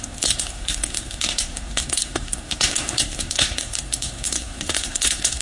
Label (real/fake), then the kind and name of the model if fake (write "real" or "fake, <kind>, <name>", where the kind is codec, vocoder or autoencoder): fake, codec, SNAC